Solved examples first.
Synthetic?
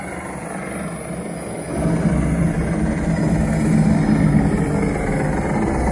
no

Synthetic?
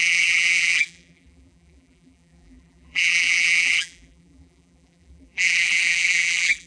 yes